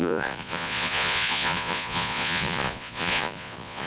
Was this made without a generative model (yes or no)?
no